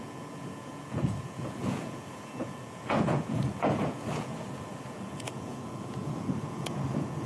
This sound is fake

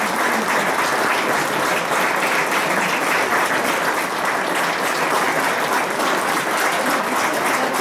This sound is real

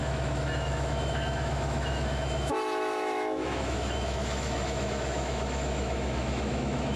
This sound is fake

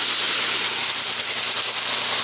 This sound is real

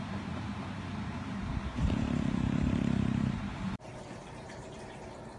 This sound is fake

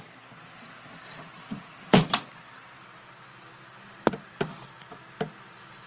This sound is real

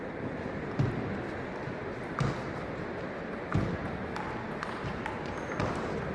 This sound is real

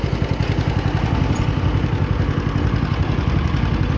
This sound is real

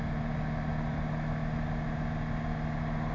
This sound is real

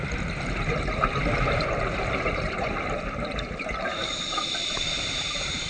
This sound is fake